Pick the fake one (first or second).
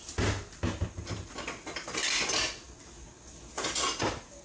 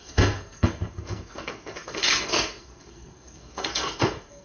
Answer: second